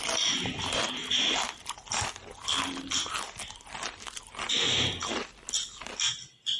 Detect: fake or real real